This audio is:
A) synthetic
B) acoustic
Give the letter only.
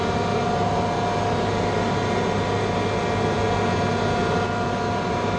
B